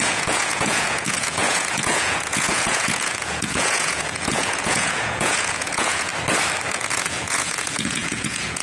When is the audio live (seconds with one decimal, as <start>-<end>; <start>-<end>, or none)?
6.1-6.7